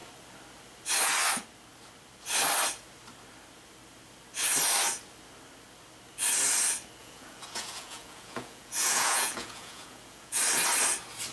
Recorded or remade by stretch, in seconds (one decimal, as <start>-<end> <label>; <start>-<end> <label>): 0.0-7.0 recorded; 7.0-10.4 remade; 10.4-11.3 recorded